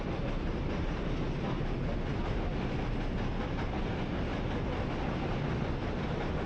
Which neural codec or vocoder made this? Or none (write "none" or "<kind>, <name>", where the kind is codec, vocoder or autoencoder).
none